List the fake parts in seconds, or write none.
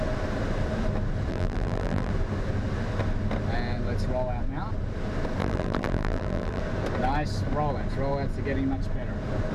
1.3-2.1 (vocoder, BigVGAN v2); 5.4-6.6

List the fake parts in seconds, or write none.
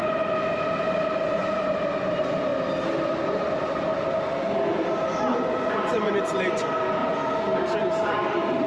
0.0-1.4 (vocoder, BigVGAN v2); 2.1-2.5; 5.7-7.0; 7.8-8.7